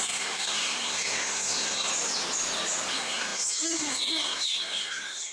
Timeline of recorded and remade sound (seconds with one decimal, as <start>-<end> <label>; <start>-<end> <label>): 0.0-1.9 remade; 1.9-2.9 recorded; 2.9-5.3 remade